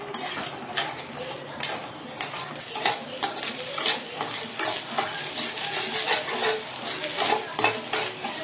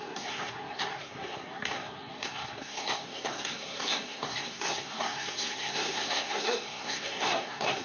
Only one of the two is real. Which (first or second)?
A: first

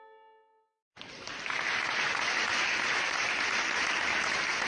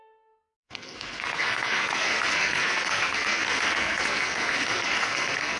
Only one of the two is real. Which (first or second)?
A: first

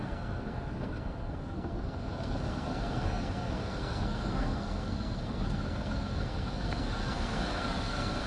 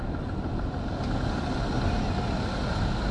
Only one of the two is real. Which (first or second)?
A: second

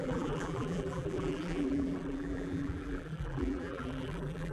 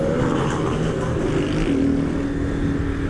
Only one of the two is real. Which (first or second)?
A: second